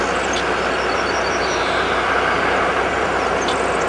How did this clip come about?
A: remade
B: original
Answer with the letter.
B